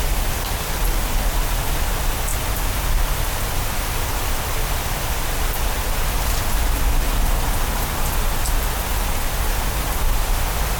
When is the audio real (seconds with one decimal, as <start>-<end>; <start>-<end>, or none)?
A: 0.0-10.8